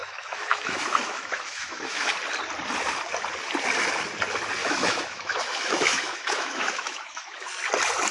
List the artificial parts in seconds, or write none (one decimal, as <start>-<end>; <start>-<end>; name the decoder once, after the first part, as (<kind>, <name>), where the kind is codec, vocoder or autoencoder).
0.0-2.1 (autoencoder, DAC-VAE); 4.6-7.5